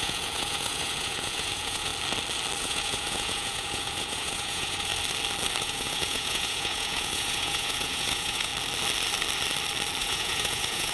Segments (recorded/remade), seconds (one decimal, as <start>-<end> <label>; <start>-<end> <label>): 0.0-1.9 remade; 1.9-2.6 recorded; 2.6-4.9 remade; 4.9-5.6 recorded; 5.6-8.5 remade; 8.5-10.0 recorded; 10.0-10.9 remade